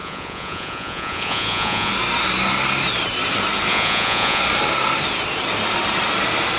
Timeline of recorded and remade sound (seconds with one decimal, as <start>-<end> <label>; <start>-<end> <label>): 0.0-1.9 remade; 1.9-3.7 recorded; 3.7-4.4 remade; 4.4-6.6 recorded